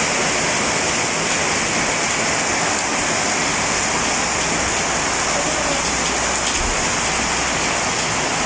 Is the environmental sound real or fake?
real